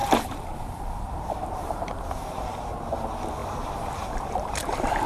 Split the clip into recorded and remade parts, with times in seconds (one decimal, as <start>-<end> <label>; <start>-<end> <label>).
0.0-2.7 remade; 2.7-3.4 recorded; 3.4-5.1 remade